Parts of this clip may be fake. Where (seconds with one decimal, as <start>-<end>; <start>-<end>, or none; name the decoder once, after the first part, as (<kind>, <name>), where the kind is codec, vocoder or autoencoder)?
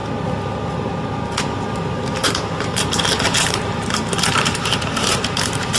2.2-5.8 (vocoder, BigVGAN v2)